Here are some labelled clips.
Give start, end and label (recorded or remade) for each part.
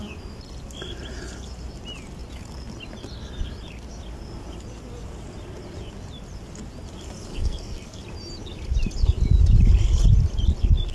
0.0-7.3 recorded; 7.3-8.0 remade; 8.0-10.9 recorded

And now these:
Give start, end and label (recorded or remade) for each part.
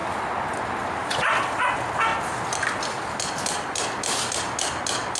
0.0-5.2 recorded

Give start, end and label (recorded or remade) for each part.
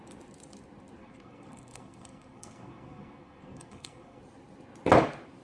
0.0-1.0 recorded; 1.0-4.2 remade; 4.2-5.4 recorded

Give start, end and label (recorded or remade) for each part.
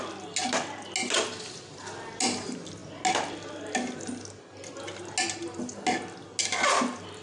0.0-7.2 recorded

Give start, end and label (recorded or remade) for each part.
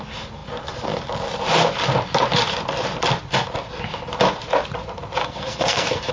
0.0-5.2 recorded; 5.2-6.1 remade